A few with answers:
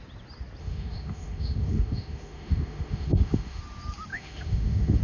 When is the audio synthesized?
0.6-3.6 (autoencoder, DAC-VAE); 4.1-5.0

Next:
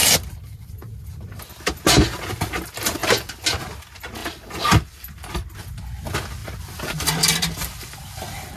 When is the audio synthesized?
0.0-1.5 (vocoder, BigVGAN v2); 3.0-3.6; 4.2-5.7; 6.4-8.6

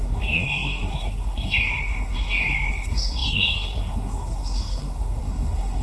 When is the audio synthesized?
0.0-5.8 (codec, SNAC)

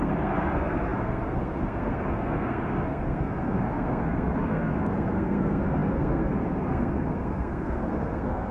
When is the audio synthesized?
0.0-8.5 (codec, SNAC)

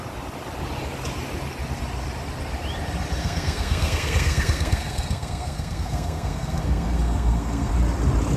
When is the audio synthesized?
3.2-7.7 (codec, SNAC)

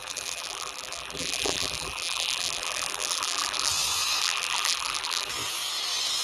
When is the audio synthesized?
0.0-3.7 (vocoder, BigVGAN v2); 4.2-5.3

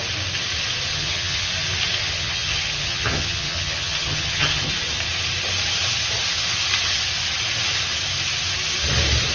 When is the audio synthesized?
0.9-1.5 (vocoder, HiFi-GAN); 2.0-4.7

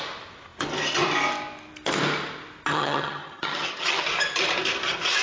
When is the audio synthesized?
2.7-4.0 (vocoder, HiFi-GAN)